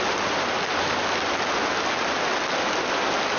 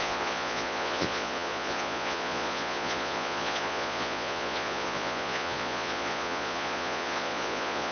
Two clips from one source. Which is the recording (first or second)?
first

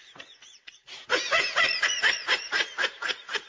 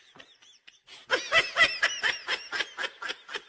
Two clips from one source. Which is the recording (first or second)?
second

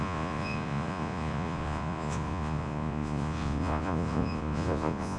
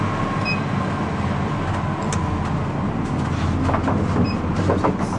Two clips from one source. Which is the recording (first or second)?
second